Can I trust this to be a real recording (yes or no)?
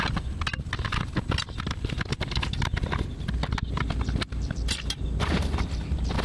yes